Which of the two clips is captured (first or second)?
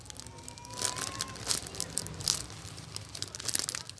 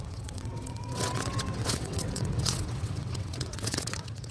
first